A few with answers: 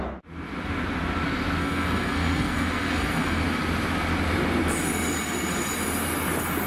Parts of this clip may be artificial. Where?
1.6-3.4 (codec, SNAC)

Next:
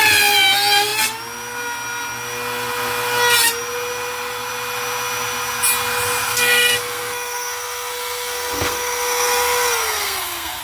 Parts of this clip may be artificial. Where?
6.3-10.6 (codec, SNAC)

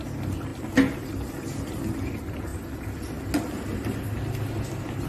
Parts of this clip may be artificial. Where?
none

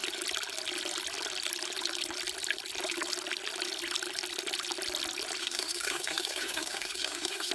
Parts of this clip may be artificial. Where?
5.4-7.5 (codec, SNAC)

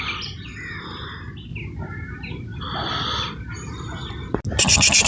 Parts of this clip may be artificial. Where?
none